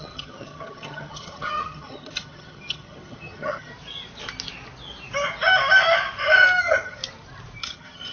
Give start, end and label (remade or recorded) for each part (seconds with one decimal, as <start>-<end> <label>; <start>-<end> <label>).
0.0-3.7 remade; 3.7-6.6 recorded; 6.6-7.0 remade; 7.0-7.6 recorded; 7.6-8.1 remade